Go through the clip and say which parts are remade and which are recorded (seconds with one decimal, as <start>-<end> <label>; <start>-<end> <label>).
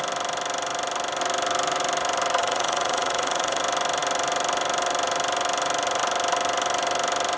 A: 0.0-2.4 recorded; 2.4-3.6 remade; 3.6-7.4 recorded